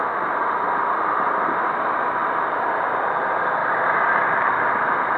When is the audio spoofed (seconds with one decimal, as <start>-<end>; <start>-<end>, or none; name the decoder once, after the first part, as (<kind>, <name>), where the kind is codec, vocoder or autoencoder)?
2.2-3.1 (vocoder, BigVGAN v2)

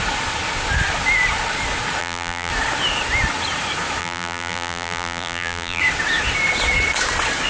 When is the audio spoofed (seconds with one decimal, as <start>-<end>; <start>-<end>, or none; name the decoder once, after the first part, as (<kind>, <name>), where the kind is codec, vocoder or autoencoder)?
2.0-2.5 (vocoder, BigVGAN v2); 4.0-5.8

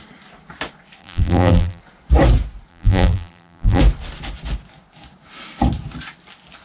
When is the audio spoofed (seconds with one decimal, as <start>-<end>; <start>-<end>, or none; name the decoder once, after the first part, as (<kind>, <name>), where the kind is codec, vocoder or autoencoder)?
1.0-1.8 (vocoder, BigVGAN v2); 2.7-3.8

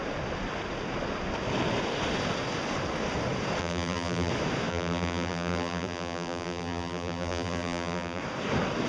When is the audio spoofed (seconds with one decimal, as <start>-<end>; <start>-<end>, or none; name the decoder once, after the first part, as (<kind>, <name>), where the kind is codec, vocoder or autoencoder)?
3.6-4.3 (vocoder, BigVGAN v2); 4.7-8.2

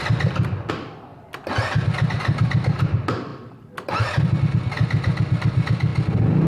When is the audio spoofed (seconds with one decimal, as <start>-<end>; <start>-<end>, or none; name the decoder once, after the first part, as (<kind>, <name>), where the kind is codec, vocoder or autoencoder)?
0.7-1.1 (vocoder, BigVGAN v2); 2.1-5.9

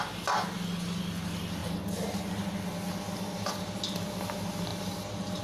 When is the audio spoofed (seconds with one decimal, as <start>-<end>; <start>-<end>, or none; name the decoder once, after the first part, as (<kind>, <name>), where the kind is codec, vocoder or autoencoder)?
4.7-5.4 (vocoder, BigVGAN v2)

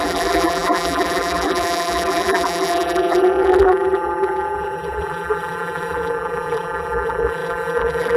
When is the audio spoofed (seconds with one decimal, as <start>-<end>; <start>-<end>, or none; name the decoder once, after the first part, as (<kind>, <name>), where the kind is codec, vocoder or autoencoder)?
0.0-8.2 (vocoder, BigVGAN v2)

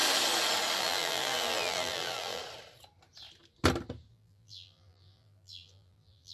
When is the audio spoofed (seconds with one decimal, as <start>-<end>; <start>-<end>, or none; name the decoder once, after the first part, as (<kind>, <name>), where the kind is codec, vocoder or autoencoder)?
0.8-2.4 (vocoder, BigVGAN v2); 4.1-6.3